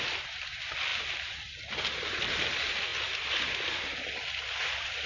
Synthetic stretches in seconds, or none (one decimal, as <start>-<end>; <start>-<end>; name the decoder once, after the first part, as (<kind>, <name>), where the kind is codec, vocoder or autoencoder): none

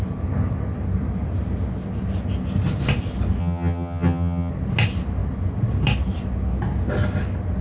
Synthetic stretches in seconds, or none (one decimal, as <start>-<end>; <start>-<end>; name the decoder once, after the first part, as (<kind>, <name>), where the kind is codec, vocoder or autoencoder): 3.4-4.5 (vocoder, HiFi-GAN)

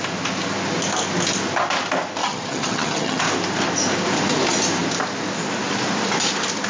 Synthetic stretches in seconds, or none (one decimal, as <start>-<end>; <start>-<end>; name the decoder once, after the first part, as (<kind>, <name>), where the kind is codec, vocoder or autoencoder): 2.2-3.2 (vocoder, HiFi-GAN)